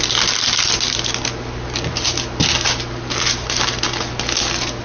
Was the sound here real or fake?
real